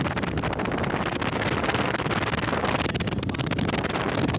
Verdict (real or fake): real